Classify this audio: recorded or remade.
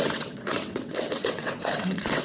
remade